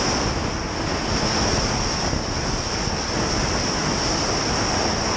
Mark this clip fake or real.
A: real